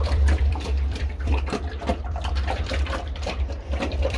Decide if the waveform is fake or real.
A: fake